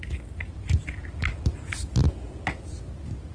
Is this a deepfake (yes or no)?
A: no